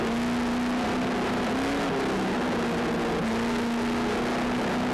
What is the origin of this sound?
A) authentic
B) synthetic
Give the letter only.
A